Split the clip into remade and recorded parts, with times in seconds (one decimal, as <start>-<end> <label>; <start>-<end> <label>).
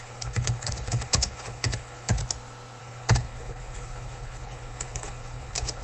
0.0-2.2 remade; 2.2-2.8 recorded; 2.8-5.8 remade